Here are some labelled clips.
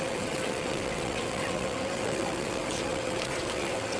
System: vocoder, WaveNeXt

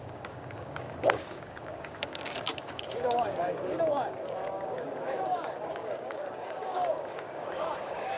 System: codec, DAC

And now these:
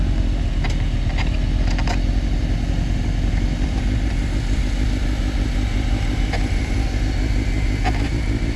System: none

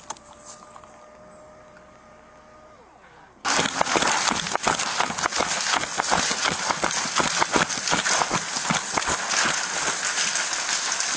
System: none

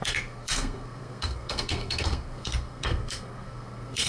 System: codec, SNAC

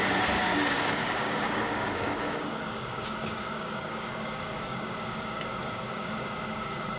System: codec, DAC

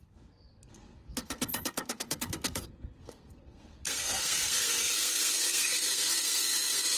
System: codec, SNAC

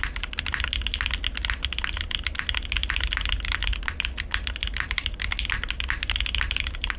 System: none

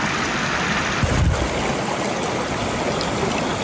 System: none